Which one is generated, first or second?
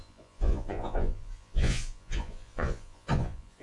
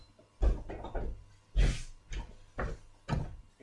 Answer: first